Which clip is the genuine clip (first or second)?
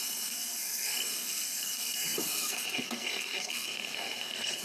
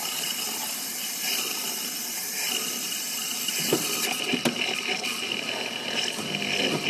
second